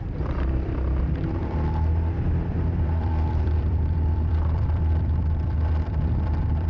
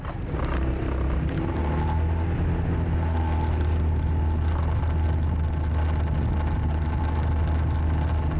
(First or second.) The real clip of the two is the second